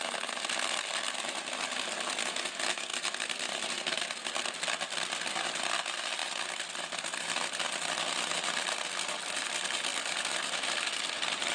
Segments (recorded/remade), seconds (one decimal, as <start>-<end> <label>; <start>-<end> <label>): 0.0-2.9 recorded; 2.9-3.9 remade; 3.9-6.2 recorded; 6.2-8.3 remade; 8.3-9.9 recorded; 9.9-10.9 remade; 10.9-11.5 recorded